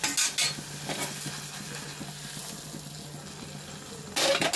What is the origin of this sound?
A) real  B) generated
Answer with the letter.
A